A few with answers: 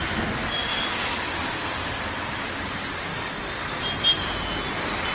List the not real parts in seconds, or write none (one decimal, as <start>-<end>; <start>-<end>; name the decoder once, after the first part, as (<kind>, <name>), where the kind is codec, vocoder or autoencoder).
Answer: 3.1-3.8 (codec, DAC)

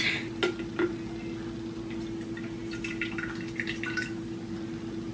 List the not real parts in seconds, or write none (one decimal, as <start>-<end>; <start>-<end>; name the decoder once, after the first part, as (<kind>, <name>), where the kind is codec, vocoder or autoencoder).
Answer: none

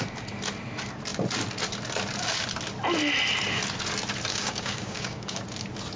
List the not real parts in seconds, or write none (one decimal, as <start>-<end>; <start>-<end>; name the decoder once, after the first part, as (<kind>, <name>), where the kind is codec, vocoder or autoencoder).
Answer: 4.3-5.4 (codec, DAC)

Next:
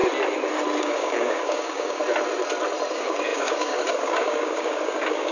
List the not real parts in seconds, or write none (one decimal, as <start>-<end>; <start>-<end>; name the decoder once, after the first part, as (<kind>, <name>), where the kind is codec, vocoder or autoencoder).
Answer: 0.8-2.0 (codec, DAC); 2.9-5.3

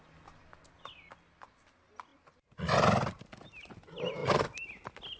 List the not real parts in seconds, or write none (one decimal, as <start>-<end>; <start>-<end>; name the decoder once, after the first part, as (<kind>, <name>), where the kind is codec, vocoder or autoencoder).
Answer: none